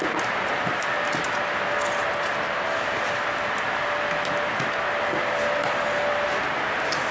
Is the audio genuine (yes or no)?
yes